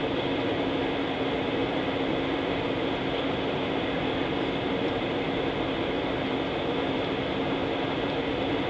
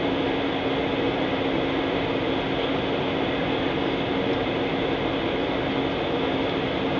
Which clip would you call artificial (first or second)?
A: first